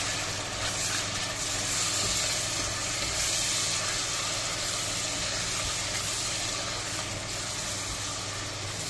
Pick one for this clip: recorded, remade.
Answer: recorded